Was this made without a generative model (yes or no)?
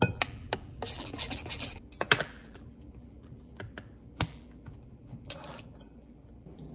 no